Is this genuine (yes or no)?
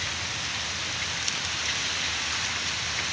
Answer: yes